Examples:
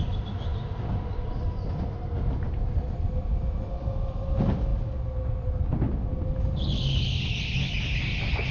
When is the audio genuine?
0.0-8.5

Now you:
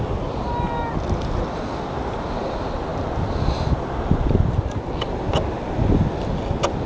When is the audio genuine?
0.0-6.9